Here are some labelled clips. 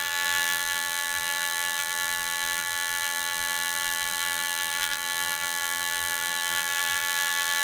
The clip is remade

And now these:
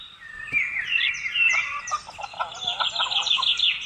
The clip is recorded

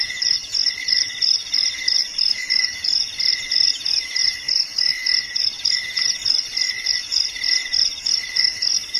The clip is remade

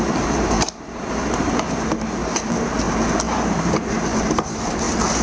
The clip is remade